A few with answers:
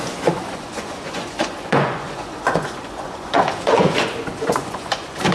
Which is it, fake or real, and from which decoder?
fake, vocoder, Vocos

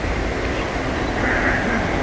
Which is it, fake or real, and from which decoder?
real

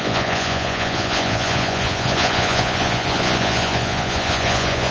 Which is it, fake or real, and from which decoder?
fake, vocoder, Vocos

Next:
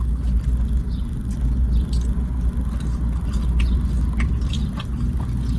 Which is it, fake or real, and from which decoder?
real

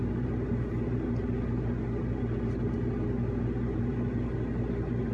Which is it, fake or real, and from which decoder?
real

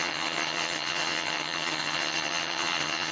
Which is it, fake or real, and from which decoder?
fake, vocoder, HiFi-GAN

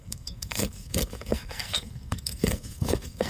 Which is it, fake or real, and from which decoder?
fake, codec, SNAC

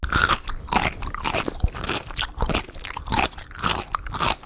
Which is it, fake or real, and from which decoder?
real